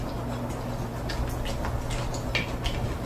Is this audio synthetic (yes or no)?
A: no